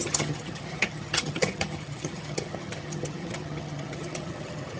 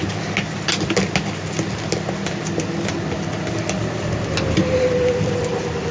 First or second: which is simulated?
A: first